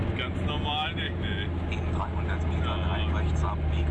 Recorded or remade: recorded